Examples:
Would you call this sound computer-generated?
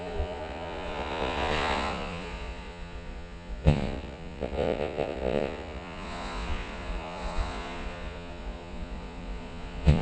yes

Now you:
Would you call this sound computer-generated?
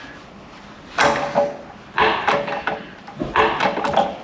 no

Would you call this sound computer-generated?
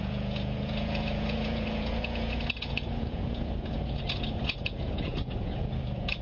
yes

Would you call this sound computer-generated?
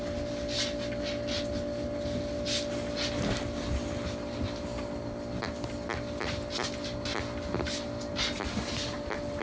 no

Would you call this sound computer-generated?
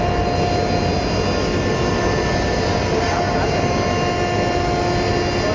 no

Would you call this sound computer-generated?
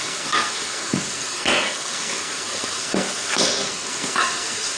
yes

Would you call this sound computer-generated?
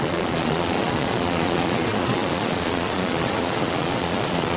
yes